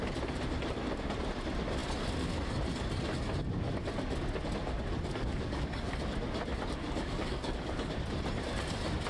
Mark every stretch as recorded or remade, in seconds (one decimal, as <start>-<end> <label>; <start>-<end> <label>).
0.0-5.1 recorded; 5.1-5.9 remade; 5.9-6.8 recorded; 6.8-7.9 remade; 7.9-9.1 recorded